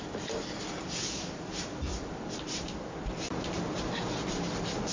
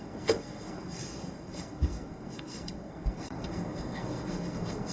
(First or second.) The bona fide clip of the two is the first